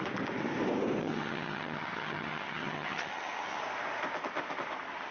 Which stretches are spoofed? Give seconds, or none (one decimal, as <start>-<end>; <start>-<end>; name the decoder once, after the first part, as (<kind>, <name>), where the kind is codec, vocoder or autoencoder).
1.0-3.6 (vocoder, HiFi-GAN)